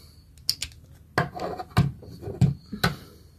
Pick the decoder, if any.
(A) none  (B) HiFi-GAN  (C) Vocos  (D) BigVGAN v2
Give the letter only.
A